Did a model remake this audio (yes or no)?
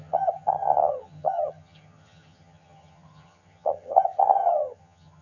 yes